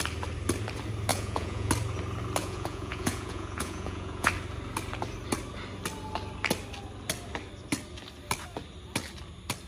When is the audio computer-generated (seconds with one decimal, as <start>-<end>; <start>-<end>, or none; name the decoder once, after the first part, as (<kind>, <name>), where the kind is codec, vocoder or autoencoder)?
1.1-1.7 (vocoder, Vocos); 2.4-4.3